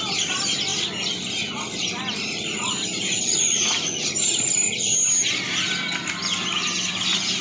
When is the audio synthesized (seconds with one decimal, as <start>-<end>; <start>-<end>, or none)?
none